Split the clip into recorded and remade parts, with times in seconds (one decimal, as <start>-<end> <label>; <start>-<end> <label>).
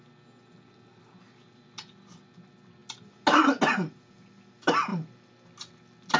0.0-6.2 recorded